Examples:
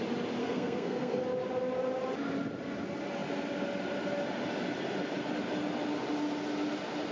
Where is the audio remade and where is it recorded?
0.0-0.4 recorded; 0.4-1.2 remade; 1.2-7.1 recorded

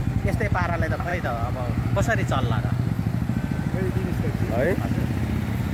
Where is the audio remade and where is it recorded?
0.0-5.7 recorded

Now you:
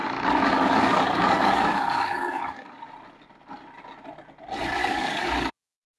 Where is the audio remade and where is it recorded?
0.0-2.9 remade; 2.9-4.8 recorded; 4.8-6.0 remade

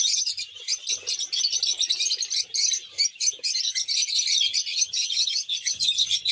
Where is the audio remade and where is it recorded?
0.0-4.7 recorded; 4.7-6.3 remade

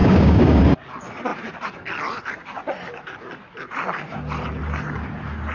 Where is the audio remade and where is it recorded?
0.0-0.6 remade; 0.6-5.5 recorded

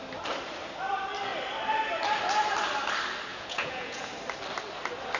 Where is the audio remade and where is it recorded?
0.0-3.3 recorded; 3.3-4.1 remade; 4.1-5.2 recorded